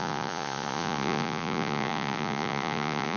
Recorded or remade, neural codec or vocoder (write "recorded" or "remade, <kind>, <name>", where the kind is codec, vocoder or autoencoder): remade, vocoder, Vocos